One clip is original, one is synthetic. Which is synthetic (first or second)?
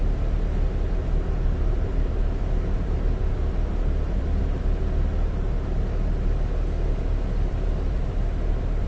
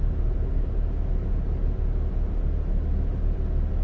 first